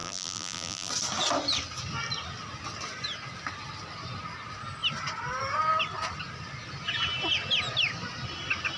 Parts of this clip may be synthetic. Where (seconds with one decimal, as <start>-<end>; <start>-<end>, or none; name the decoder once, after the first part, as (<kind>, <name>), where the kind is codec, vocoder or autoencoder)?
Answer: 0.0-0.9 (vocoder, BigVGAN v2)

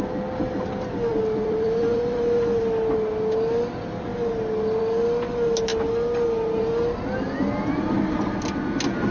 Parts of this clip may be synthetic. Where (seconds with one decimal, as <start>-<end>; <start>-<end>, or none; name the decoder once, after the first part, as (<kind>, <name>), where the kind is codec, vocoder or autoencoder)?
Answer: 1.1-2.6 (vocoder, BigVGAN v2)